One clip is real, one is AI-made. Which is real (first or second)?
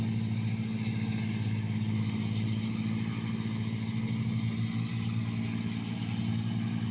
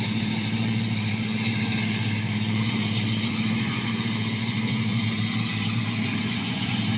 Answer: first